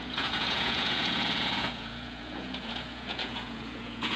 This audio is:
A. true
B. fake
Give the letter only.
B